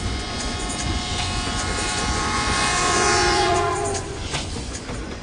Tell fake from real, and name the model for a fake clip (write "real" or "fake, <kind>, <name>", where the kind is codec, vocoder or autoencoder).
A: fake, vocoder, Vocos